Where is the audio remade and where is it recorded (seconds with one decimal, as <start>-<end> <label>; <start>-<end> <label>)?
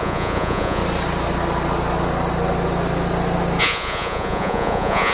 0.0-0.8 remade; 0.8-3.6 recorded; 3.6-5.1 remade